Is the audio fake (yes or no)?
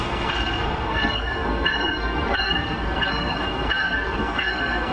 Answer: yes